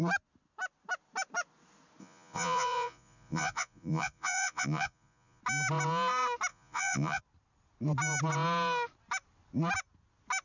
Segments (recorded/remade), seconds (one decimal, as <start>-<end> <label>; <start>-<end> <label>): 0.0-2.0 recorded; 2.0-5.4 remade; 5.4-6.5 recorded; 6.5-7.2 remade; 7.2-10.4 recorded